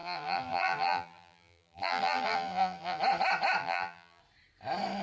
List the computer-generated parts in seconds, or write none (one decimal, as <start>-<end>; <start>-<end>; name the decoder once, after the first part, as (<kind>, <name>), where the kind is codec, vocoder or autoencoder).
0.0-3.0 (vocoder, BigVGAN v2); 3.6-4.2